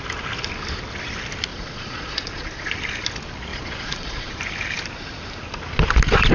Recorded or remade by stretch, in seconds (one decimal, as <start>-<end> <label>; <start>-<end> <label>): 0.0-1.5 recorded; 1.5-2.7 remade; 2.7-3.5 recorded; 3.5-4.4 remade; 4.4-6.3 recorded